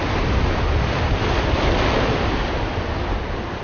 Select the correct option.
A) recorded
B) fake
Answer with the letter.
A